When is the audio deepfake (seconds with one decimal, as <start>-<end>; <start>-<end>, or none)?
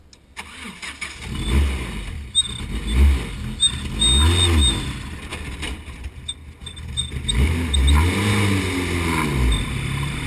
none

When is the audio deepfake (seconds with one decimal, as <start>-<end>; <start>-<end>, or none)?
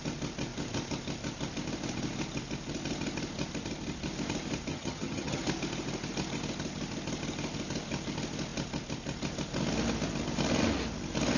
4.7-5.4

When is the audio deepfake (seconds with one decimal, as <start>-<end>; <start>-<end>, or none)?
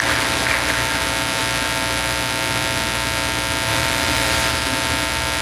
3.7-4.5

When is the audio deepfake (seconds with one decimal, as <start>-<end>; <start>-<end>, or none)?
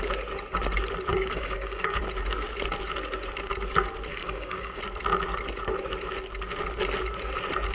1.1-2.0; 4.1-4.8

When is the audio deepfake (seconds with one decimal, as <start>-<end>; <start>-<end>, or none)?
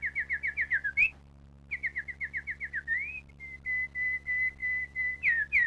none